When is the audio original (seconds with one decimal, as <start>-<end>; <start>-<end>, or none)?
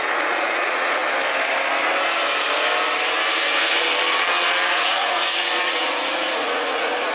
1.0-4.7